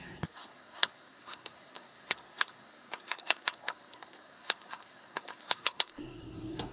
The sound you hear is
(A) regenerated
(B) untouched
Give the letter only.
A